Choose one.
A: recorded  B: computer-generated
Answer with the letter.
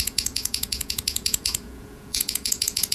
B